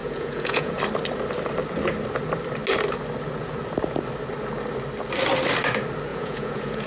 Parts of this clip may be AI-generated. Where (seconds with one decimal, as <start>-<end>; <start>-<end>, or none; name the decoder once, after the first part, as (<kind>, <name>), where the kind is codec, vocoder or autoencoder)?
0.0-0.8 (vocoder, Vocos); 6.1-6.9